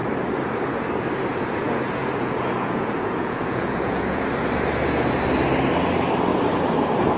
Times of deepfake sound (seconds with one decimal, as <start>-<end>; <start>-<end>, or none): 1.3-4.3